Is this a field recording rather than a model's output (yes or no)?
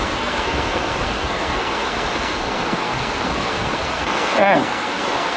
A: no